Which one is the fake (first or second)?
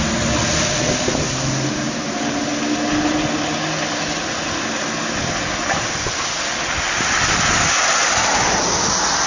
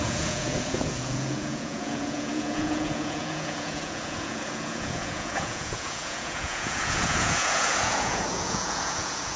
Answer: second